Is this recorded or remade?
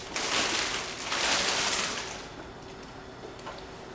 recorded